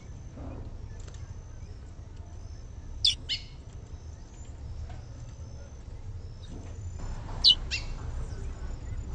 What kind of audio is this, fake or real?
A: real